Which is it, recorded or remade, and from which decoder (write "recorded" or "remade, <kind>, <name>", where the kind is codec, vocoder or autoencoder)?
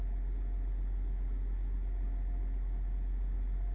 recorded